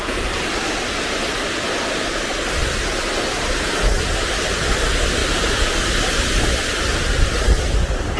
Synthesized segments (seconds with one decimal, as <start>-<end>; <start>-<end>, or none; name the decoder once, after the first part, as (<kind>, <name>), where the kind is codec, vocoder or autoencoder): 5.2-7.6 (vocoder, BigVGAN v2)